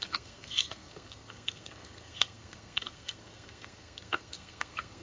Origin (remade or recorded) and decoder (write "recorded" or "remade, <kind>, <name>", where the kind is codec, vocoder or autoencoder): remade, codec, SNAC